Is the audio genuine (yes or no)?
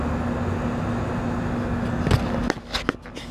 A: yes